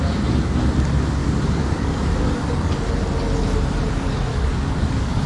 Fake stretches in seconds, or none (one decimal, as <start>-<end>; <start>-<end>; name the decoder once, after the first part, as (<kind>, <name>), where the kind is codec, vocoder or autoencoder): 1.2-2.9 (codec, DAC); 4.3-5.3